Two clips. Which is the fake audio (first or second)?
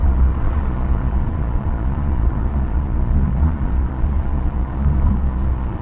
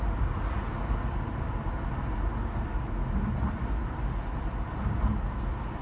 first